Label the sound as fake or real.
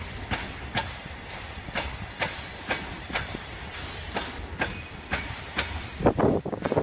real